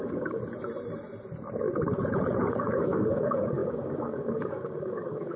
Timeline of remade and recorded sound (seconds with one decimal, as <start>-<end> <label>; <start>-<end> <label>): 0.0-0.4 remade; 0.4-2.5 recorded; 2.5-5.4 remade